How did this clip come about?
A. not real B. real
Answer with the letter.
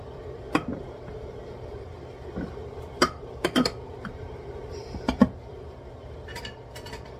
A